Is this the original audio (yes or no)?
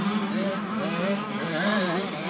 no